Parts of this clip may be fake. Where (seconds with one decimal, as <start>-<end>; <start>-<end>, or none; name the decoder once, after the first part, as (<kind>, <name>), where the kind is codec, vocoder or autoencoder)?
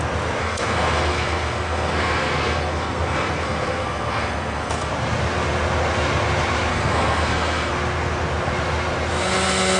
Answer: 0.4-4.9 (codec, SNAC); 6.7-7.7